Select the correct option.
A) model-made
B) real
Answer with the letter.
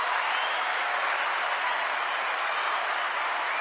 B